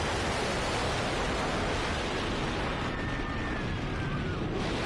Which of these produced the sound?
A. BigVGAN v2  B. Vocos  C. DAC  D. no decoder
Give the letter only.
D